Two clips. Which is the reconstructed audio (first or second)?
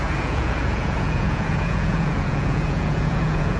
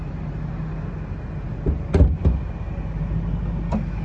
first